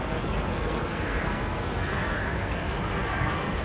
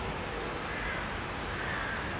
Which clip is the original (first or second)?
second